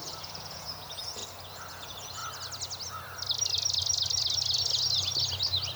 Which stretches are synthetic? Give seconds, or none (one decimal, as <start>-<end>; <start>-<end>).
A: 0.0-1.2; 1.7-2.2